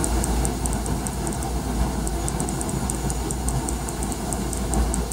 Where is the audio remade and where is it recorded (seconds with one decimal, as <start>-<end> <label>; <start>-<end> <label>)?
0.0-5.1 recorded